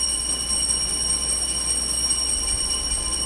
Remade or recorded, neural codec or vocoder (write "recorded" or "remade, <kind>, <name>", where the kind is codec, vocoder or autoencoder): recorded